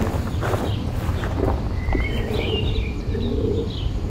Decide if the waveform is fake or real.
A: fake